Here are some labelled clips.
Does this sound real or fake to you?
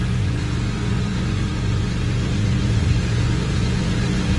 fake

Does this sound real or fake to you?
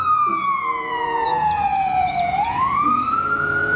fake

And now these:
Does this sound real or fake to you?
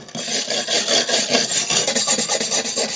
real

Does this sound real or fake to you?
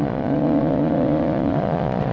fake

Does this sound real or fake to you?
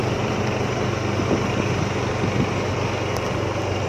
real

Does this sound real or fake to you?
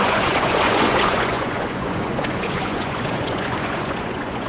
fake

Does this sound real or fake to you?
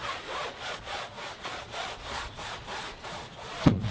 fake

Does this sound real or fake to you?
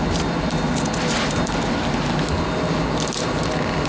real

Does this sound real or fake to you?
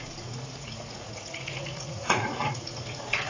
fake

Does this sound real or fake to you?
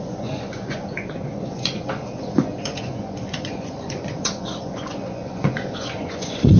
fake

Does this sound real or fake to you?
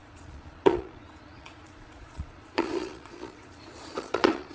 fake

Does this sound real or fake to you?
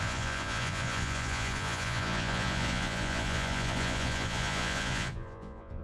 fake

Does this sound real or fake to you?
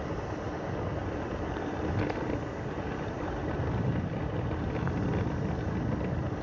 real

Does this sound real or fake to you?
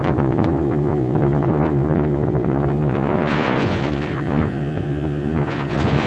fake